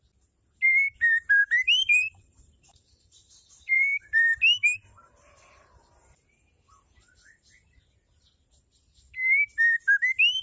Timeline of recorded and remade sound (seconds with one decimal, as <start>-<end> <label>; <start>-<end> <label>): 0.0-1.4 recorded; 1.4-4.4 remade; 4.4-10.4 recorded